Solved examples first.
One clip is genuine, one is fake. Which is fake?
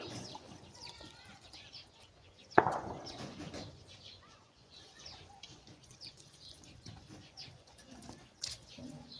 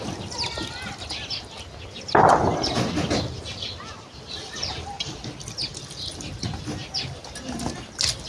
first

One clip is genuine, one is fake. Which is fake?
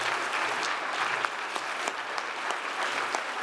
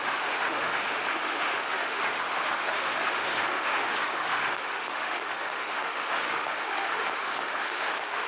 second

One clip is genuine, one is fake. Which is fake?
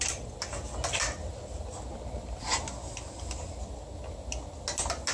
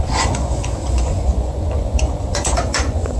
second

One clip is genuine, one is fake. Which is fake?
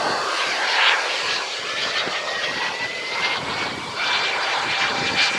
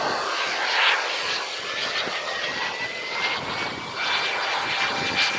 first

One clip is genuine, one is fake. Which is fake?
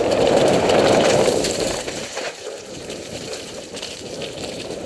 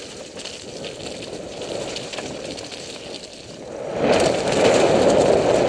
first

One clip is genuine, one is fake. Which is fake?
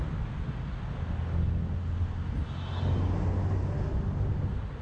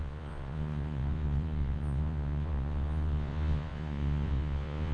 second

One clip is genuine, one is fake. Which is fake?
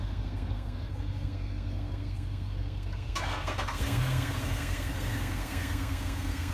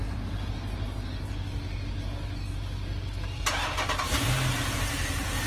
first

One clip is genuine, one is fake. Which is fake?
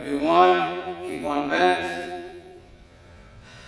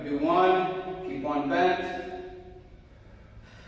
first